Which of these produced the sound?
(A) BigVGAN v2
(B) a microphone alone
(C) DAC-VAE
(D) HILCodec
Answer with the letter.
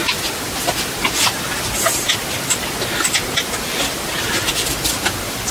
B